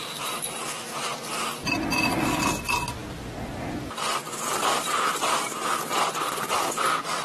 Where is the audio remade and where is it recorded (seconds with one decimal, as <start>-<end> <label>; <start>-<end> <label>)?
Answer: 0.0-7.2 recorded